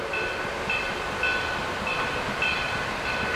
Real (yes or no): yes